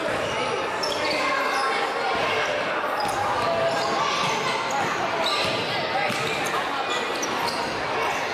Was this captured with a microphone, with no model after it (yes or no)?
yes